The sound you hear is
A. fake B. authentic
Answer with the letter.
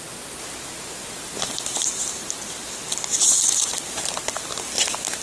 B